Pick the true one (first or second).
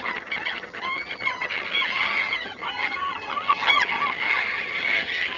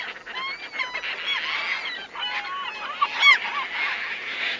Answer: second